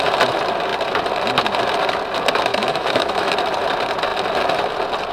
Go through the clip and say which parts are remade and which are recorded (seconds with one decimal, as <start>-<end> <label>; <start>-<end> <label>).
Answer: 0.0-2.5 recorded; 2.5-3.3 remade; 3.3-5.1 recorded